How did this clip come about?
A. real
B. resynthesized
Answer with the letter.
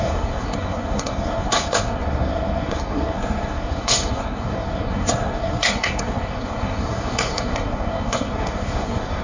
B